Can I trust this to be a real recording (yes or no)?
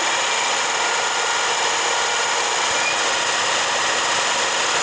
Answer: yes